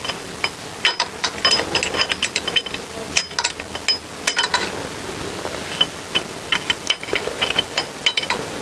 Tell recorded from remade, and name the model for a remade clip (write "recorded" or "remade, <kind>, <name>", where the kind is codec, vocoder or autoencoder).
recorded